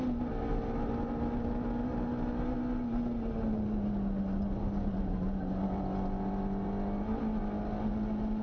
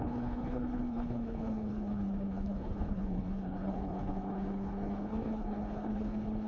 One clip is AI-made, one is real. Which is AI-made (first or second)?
second